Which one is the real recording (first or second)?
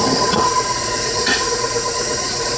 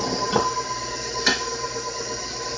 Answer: second